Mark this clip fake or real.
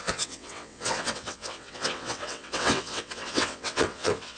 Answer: fake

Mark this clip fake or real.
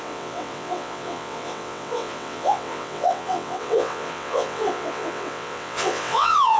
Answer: fake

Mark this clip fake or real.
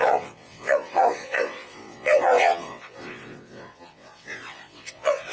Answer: fake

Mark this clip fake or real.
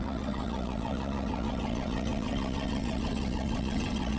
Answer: fake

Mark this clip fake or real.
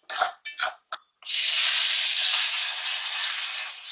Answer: real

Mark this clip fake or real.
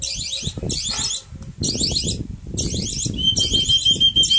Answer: real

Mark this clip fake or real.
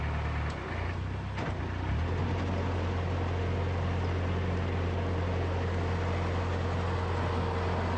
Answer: real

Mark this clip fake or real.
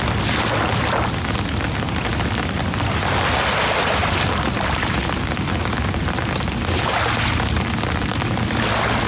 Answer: real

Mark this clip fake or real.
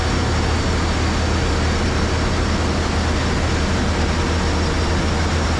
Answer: real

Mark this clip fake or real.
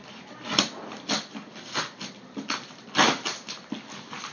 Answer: real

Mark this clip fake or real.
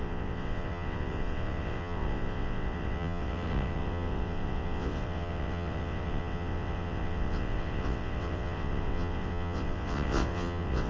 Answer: fake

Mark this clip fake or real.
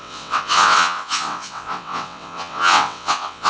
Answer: fake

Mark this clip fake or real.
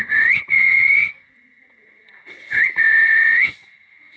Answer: fake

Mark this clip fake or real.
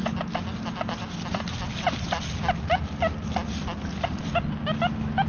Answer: real